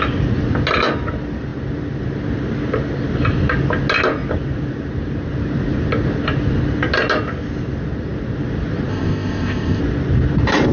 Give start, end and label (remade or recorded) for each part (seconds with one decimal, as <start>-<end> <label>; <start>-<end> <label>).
0.0-8.9 recorded; 8.9-9.8 remade; 9.8-10.7 recorded